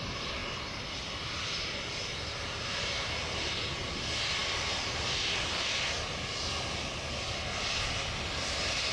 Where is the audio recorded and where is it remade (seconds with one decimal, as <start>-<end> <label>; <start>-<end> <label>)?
0.0-8.9 recorded